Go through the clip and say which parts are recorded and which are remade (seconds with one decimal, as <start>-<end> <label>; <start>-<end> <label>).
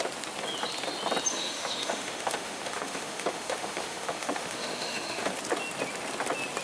0.0-1.3 recorded; 1.3-5.3 remade; 5.3-6.6 recorded